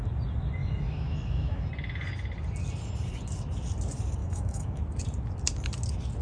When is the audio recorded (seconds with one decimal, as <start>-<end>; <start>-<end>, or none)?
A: 0.0-0.6; 1.7-4.2; 4.8-6.2